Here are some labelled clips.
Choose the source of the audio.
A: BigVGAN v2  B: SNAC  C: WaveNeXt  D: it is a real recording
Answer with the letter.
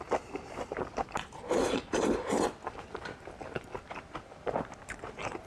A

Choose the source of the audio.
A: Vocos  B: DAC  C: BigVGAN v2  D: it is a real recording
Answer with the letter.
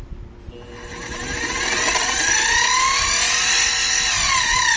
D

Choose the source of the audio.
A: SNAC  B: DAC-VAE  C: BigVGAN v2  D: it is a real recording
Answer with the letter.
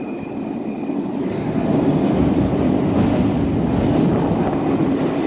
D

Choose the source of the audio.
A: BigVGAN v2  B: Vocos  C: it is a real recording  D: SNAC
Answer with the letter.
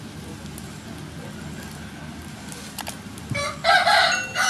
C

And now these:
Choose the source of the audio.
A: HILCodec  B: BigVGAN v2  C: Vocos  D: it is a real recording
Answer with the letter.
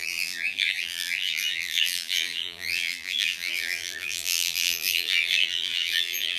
B